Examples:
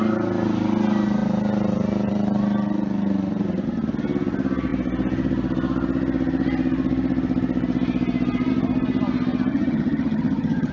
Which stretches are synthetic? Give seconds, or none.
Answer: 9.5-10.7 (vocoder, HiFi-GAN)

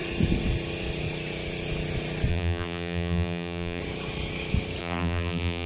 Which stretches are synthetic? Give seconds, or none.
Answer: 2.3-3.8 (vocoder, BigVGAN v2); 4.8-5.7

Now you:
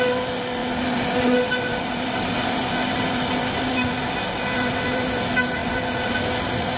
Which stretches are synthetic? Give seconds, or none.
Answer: none

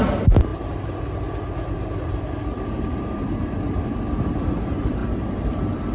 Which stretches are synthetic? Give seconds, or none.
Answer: 0.0-5.9 (vocoder, BigVGAN v2)

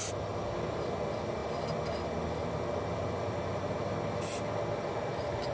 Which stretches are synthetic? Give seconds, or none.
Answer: none

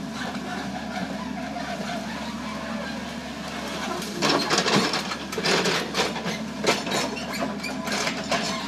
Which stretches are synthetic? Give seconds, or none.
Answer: none

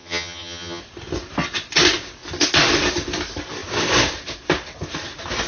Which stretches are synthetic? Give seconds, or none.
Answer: 0.0-0.8 (vocoder, HiFi-GAN)